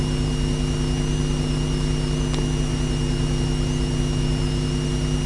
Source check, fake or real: real